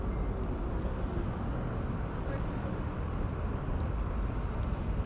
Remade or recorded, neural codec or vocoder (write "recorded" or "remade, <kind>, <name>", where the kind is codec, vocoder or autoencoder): recorded